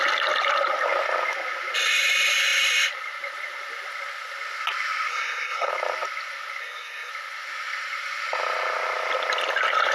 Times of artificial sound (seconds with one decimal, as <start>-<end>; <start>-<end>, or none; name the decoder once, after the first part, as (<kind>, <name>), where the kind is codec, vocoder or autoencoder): 5.1-5.7 (codec, SNAC); 6.6-7.1